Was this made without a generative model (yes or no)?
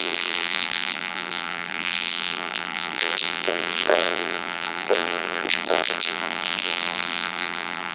no